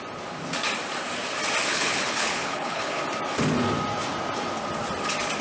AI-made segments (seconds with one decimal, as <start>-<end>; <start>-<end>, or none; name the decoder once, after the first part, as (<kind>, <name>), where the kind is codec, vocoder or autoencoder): 1.7-3.0 (codec, HILCodec)